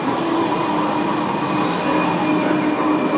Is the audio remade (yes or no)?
no